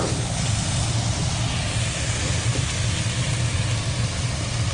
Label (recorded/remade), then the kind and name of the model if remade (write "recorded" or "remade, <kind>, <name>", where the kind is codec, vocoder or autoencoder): recorded